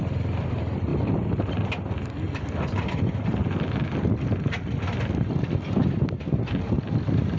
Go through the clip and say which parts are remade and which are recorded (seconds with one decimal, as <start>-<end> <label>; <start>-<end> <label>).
0.0-7.4 recorded